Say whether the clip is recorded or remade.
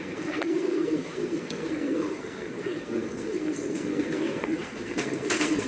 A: remade